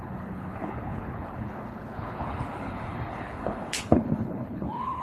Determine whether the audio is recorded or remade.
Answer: remade